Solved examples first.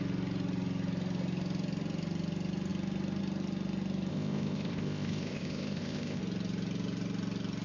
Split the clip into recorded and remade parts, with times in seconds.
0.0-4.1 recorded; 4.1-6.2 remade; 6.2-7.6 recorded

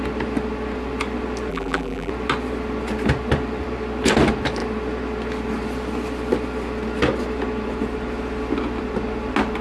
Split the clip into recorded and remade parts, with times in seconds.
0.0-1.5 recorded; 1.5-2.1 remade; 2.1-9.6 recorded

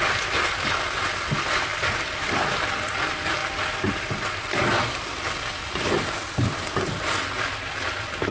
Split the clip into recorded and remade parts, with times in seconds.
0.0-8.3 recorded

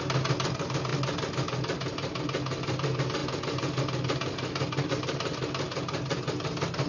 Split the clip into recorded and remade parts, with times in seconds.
0.0-6.9 recorded

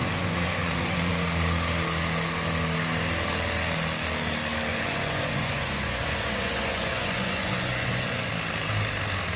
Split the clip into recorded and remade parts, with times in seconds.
0.0-1.1 remade; 1.1-4.7 recorded; 4.7-8.3 remade; 8.3-9.4 recorded